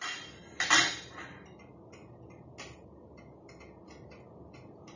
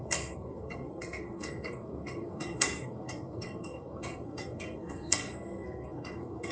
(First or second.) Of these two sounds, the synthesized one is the second